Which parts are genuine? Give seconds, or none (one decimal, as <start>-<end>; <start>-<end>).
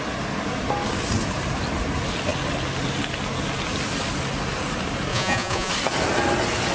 0.0-5.1; 5.7-6.7